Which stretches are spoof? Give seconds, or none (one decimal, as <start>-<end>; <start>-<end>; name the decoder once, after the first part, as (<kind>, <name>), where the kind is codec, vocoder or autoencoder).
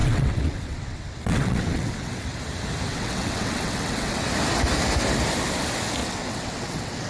0.0-2.4 (vocoder, WaveNeXt); 2.9-4.2; 6.0-7.1